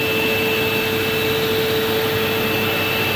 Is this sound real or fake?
fake